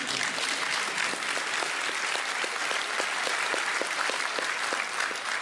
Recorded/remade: recorded